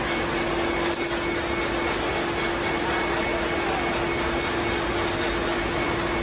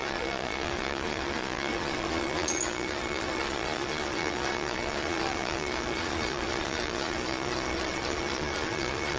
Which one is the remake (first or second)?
second